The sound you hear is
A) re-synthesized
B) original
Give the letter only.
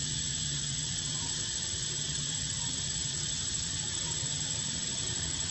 A